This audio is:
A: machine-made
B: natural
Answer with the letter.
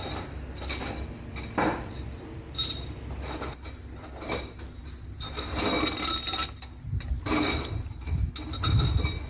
B